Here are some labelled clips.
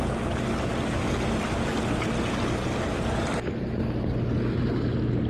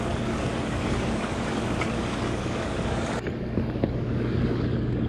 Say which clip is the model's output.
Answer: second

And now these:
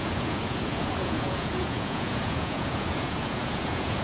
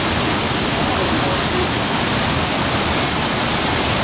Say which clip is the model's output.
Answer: first